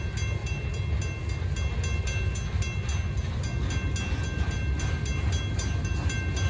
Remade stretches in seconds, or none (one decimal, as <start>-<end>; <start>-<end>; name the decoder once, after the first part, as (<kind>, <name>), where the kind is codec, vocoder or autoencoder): none